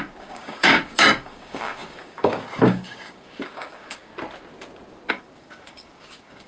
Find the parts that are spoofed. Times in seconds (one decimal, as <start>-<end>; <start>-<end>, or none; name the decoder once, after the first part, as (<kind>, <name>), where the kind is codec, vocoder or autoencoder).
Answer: 0.0-4.1 (codec, DAC); 5.1-6.5